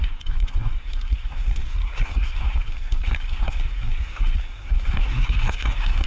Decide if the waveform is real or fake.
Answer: fake